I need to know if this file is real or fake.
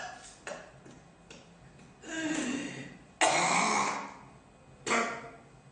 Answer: real